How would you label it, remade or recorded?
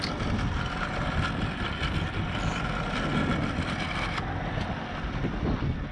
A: recorded